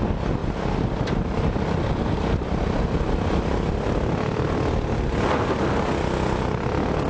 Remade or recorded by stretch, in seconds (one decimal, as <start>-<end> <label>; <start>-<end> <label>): 0.0-7.1 recorded